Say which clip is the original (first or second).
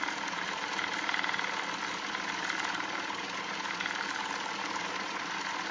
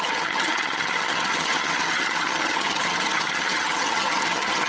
first